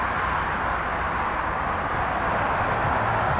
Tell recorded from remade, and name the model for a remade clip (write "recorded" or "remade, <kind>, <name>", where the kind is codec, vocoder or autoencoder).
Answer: recorded